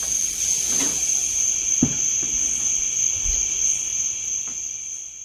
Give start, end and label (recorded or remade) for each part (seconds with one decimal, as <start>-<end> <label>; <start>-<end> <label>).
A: 0.0-3.9 recorded; 3.9-4.8 remade; 4.8-5.2 recorded